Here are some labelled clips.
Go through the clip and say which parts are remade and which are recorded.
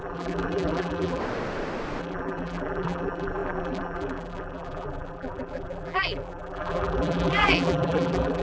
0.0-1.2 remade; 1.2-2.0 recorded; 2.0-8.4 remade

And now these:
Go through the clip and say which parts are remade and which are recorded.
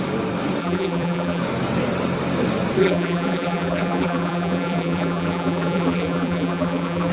0.0-0.6 recorded; 0.6-1.4 remade; 1.4-2.8 recorded; 2.8-7.1 remade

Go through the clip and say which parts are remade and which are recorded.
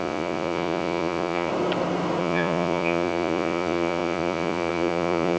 0.0-1.5 remade; 1.5-2.2 recorded; 2.2-5.4 remade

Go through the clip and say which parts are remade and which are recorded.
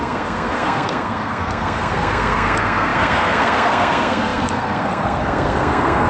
0.0-6.1 remade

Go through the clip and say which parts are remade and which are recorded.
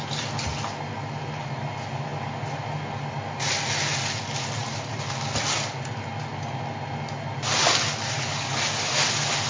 0.0-9.5 recorded